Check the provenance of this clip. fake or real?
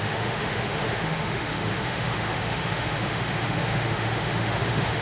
fake